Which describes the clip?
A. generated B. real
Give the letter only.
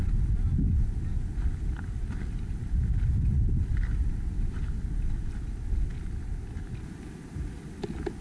B